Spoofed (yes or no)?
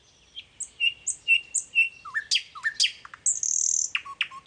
no